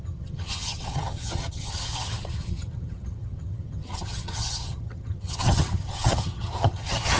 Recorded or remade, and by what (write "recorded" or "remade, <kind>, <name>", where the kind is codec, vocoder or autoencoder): remade, vocoder, HiFi-GAN